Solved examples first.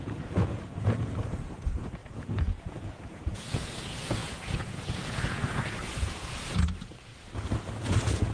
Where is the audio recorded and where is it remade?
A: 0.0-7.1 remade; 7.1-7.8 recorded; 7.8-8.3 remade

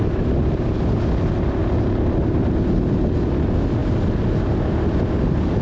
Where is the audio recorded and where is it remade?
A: 0.0-5.6 recorded

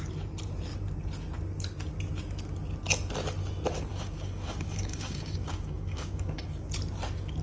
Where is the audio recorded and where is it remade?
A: 0.0-3.9 recorded; 3.9-6.7 remade; 6.7-7.4 recorded

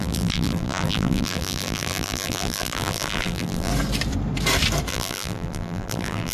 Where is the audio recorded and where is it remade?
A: 0.0-3.7 remade; 3.7-4.9 recorded; 4.9-6.3 remade

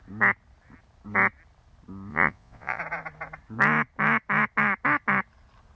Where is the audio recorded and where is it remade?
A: 0.0-2.1 recorded; 2.1-2.8 remade; 2.8-5.8 recorded

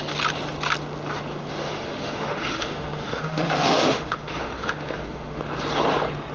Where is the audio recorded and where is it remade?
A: 0.0-1.6 recorded; 1.6-5.4 remade; 5.4-6.3 recorded

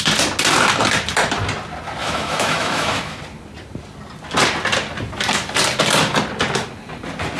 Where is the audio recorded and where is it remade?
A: 0.0-2.0 recorded; 2.0-3.2 remade; 3.2-7.4 recorded